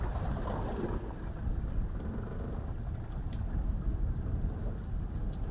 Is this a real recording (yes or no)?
yes